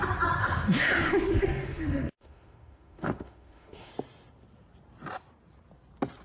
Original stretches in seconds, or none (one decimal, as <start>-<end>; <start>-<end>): 0.0-0.4; 3.9-6.2